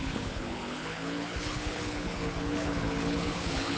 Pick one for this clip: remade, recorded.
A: remade